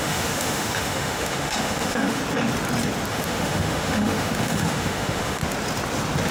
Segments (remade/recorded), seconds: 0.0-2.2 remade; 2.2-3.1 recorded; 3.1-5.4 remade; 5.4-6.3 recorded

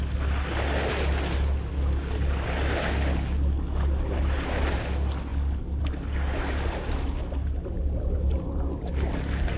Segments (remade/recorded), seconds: 0.0-9.6 recorded

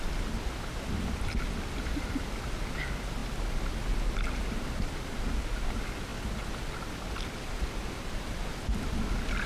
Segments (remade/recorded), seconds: 0.0-9.5 recorded

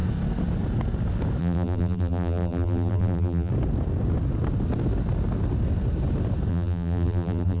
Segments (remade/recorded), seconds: 0.0-1.4 recorded; 1.4-3.5 remade; 3.5-6.5 recorded; 6.5-7.6 remade

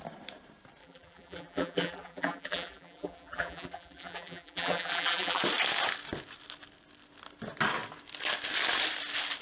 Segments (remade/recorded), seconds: 0.0-0.8 recorded; 0.8-5.4 remade; 5.4-9.4 recorded

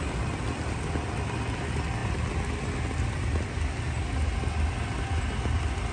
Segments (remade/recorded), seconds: 0.0-5.9 recorded